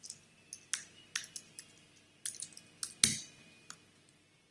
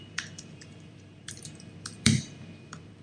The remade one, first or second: second